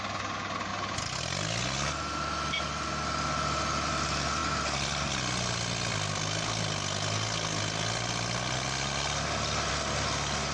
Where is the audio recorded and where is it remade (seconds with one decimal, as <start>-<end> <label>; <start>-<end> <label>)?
0.0-10.5 recorded